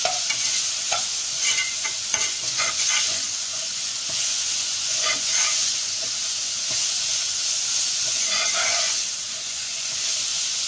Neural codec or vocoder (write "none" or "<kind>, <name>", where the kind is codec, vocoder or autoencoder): vocoder, Vocos